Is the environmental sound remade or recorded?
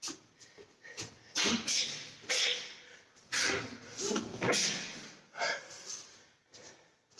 recorded